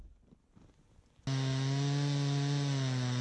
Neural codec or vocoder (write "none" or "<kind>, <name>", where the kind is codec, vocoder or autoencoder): none